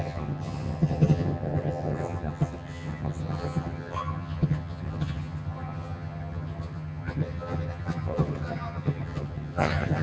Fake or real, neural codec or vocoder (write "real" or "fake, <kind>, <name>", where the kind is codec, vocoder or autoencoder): fake, vocoder, HiFi-GAN